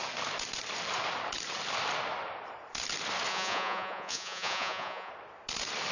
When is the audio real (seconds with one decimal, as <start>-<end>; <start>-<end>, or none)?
0.0-3.3; 5.1-5.9